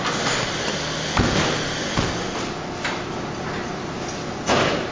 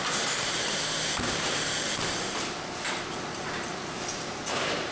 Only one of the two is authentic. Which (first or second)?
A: first